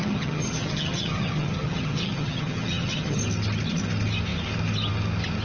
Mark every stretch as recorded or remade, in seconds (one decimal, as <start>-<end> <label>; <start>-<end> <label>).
0.0-3.2 remade; 3.2-5.4 recorded